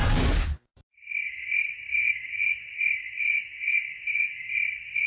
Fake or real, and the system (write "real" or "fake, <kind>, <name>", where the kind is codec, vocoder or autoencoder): real